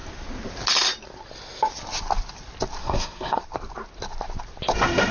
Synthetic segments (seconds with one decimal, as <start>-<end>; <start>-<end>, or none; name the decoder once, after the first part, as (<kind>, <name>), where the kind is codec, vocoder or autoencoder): 2.8-3.4 (codec, SNAC)